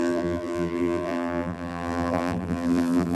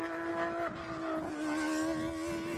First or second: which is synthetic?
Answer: first